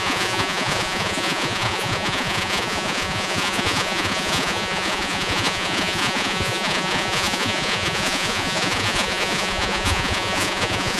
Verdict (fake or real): fake